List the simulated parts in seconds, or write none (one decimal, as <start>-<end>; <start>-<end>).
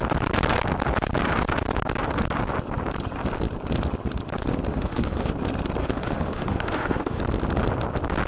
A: 4.7-5.3; 5.8-7.2